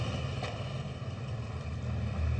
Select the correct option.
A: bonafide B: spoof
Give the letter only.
A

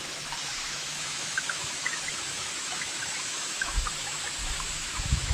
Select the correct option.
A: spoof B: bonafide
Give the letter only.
A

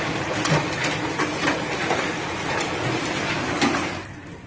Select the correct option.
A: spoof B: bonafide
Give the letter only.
B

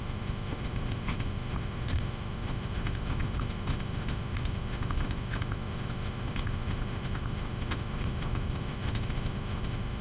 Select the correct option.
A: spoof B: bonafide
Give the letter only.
A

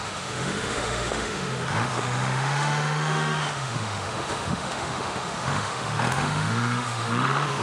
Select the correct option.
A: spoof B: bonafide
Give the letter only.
A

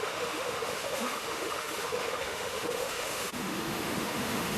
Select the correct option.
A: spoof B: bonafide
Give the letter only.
A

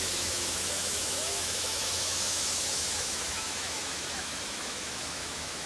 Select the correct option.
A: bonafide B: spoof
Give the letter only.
B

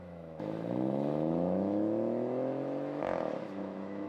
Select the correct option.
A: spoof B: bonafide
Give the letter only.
A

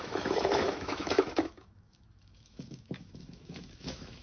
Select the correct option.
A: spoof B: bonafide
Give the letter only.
A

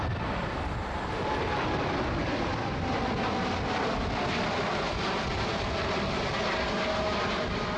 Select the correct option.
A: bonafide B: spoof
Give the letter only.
A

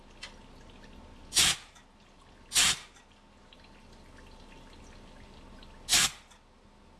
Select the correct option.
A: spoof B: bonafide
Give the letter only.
B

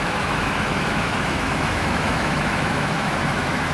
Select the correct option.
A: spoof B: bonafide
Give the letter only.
A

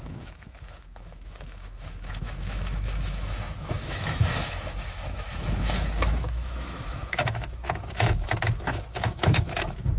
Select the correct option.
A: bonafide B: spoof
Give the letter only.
B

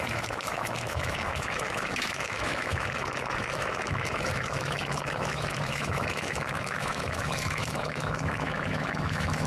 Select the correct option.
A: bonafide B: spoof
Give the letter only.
B